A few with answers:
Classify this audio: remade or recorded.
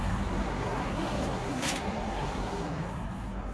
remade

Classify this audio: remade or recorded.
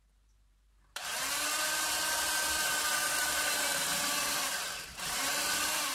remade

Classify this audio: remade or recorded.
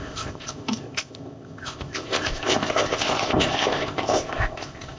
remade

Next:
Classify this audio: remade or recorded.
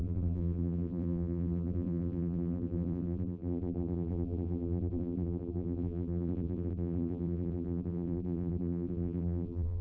remade